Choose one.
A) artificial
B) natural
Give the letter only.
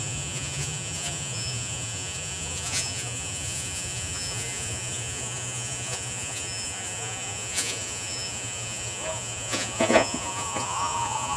A